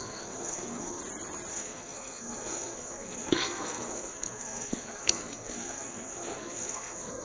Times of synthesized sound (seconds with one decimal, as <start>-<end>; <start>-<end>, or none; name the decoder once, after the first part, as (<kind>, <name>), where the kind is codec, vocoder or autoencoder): 0.0-1.0 (codec, SNAC); 1.5-7.2